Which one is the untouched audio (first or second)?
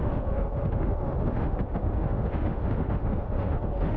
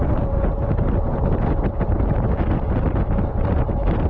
second